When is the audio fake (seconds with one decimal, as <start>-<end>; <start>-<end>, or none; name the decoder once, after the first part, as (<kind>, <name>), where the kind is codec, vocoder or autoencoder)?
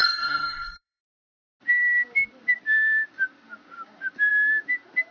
0.0-1.0 (codec, SNAC)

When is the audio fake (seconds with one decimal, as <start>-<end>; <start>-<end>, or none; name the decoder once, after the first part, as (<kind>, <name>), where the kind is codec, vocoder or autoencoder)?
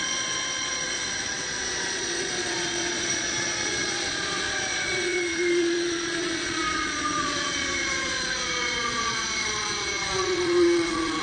0.0-11.2 (vocoder, Vocos)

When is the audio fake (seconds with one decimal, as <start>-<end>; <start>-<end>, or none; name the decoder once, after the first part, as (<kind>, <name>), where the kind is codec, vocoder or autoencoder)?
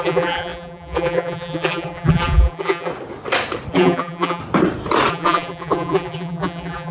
0.0-2.9 (vocoder, BigVGAN v2); 3.7-4.4; 5.1-6.9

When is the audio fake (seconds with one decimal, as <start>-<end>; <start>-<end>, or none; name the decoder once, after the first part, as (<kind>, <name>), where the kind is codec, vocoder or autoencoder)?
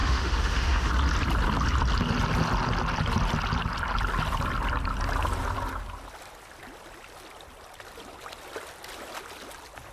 0.0-0.9 (autoencoder, DAC-VAE)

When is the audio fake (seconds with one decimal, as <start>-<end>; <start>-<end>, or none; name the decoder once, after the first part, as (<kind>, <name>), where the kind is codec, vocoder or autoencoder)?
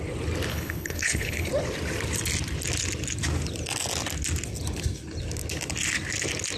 0.5-1.5 (codec, HILCodec)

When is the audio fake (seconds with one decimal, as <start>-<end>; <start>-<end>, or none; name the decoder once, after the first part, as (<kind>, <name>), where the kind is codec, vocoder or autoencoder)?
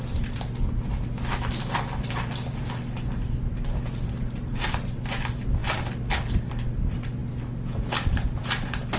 none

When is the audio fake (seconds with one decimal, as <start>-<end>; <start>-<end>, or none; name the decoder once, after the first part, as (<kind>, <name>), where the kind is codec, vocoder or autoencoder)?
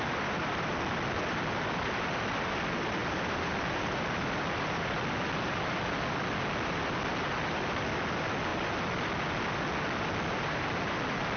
none